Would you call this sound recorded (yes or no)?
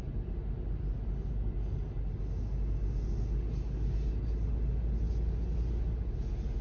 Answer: yes